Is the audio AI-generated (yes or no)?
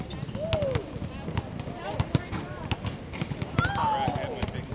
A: no